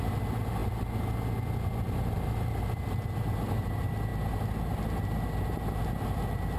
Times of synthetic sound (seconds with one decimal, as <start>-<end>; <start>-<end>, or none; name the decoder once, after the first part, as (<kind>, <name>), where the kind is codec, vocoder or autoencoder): none